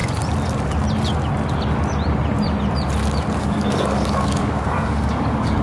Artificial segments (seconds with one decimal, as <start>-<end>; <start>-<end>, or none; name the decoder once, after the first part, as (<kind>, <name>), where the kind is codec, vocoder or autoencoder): 3.4-5.6 (codec, DAC)